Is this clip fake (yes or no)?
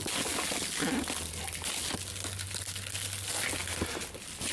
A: no